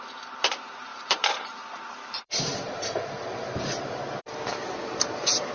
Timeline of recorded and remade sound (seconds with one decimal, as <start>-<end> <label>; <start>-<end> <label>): 0.0-5.5 remade